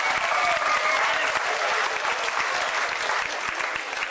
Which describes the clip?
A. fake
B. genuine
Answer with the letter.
B